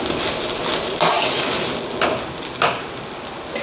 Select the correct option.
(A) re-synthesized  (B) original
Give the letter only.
B